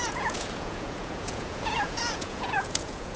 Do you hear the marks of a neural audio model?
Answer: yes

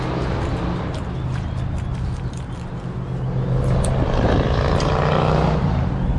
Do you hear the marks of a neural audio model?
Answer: no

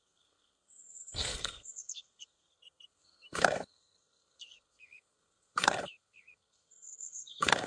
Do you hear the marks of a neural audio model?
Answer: yes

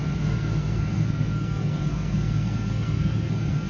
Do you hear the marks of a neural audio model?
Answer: yes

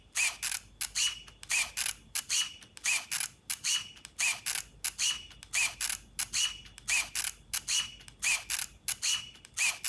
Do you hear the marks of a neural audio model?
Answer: no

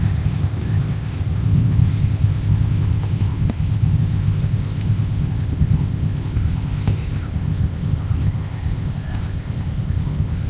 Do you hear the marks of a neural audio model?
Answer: yes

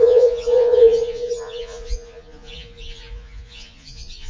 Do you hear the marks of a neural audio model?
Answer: yes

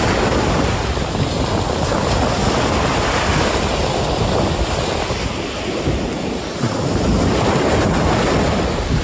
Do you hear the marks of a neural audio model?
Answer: no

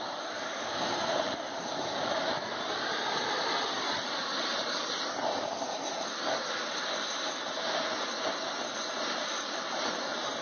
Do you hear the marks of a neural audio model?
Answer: yes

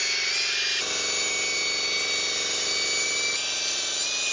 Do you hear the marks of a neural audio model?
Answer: no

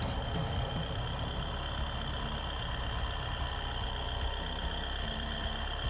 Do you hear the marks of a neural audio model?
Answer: no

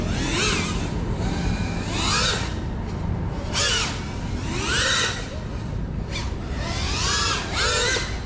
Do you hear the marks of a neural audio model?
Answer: no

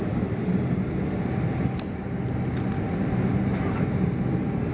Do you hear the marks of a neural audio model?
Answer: no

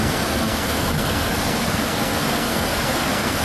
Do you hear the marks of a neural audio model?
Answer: yes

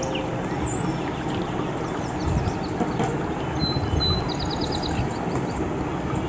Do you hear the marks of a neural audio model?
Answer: no